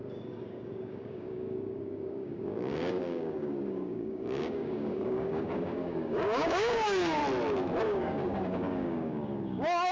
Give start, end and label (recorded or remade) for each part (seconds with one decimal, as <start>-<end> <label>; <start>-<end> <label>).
0.0-7.2 remade; 7.2-7.8 recorded; 7.8-9.9 remade

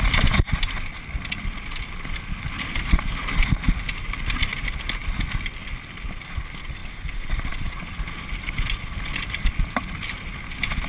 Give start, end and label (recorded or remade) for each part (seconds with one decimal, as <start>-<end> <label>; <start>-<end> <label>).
0.0-10.9 recorded

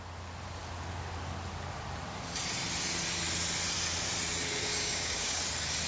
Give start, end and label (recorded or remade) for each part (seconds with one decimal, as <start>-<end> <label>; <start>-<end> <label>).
0.0-4.6 recorded; 4.6-5.4 remade; 5.4-5.9 recorded

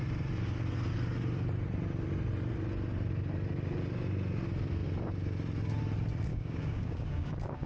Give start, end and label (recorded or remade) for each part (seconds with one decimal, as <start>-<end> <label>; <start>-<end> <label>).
0.0-6.3 recorded; 6.3-7.7 remade